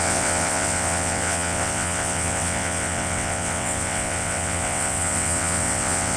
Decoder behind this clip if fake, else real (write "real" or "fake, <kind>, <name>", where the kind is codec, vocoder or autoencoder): fake, vocoder, WaveNeXt